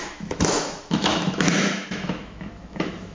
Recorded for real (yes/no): no